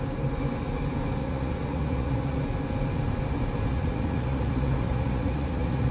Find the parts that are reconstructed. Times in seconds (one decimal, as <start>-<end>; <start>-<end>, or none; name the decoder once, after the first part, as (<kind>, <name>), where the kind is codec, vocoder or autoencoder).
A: 1.2-2.4 (vocoder, Vocos); 3.7-5.9